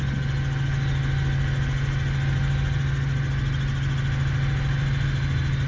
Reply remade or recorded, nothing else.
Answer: recorded